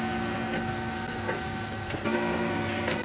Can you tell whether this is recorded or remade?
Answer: remade